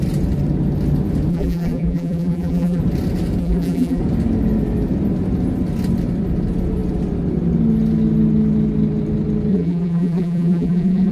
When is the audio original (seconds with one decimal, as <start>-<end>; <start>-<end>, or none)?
0.0-1.3; 2.8-3.4; 4.0-9.5